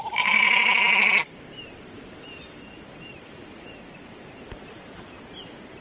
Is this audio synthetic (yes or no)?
yes